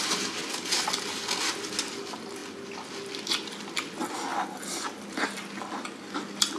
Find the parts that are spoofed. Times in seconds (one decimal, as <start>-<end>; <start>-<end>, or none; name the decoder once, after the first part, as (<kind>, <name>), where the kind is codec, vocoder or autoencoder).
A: none